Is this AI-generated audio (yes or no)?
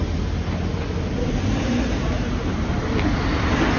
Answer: no